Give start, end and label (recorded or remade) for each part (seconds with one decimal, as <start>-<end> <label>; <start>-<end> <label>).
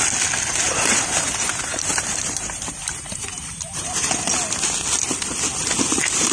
0.0-0.5 recorded; 0.5-4.3 remade; 4.3-6.3 recorded